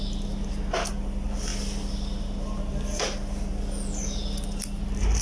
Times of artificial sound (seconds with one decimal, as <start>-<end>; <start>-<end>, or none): none